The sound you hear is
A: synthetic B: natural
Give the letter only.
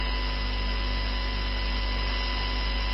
B